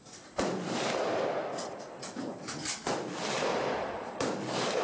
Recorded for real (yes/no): yes